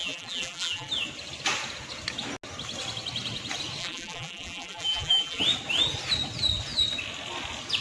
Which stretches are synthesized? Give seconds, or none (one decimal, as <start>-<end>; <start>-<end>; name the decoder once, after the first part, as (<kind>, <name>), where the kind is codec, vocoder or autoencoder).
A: 0.0-0.9 (vocoder, BigVGAN v2); 3.8-5.4